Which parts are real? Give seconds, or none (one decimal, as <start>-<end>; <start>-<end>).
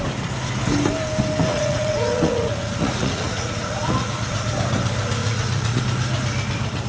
0.0-1.5; 4.5-5.2; 5.8-6.9